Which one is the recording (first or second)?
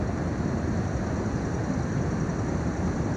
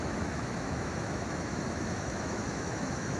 first